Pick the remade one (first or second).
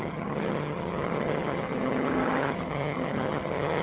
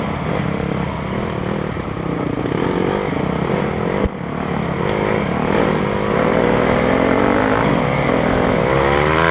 first